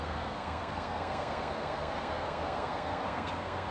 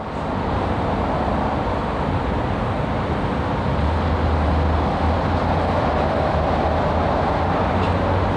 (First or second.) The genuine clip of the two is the second